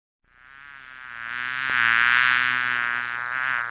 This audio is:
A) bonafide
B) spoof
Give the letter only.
A